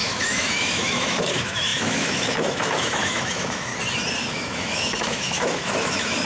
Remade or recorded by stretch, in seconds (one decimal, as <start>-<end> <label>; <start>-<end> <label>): 0.0-3.7 remade; 3.7-4.3 recorded; 4.3-6.3 remade